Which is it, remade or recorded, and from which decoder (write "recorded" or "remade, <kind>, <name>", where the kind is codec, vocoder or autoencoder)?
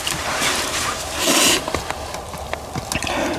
recorded